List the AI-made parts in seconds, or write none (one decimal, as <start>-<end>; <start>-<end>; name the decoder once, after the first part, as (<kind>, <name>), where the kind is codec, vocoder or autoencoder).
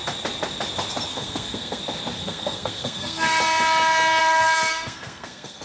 1.1-1.8 (codec, SNAC); 2.2-3.4; 4.2-5.6